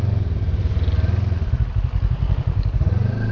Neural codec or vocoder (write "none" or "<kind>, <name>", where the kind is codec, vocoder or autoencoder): vocoder, BigVGAN v2